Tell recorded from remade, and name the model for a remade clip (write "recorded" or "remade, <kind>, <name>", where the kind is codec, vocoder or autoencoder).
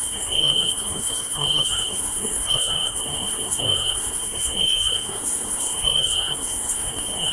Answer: remade, codec, SNAC